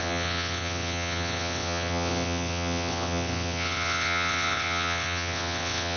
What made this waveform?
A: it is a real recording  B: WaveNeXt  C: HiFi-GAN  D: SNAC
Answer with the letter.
B